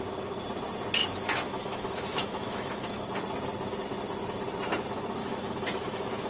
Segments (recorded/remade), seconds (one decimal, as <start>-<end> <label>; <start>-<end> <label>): 0.0-1.0 recorded; 1.0-3.1 remade; 3.1-5.2 recorded; 5.2-6.3 remade